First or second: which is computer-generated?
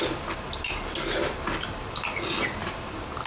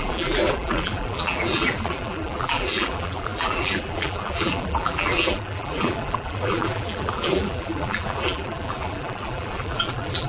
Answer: second